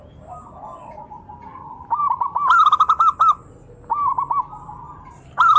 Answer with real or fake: real